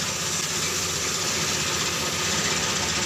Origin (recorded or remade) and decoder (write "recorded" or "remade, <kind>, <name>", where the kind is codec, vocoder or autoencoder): recorded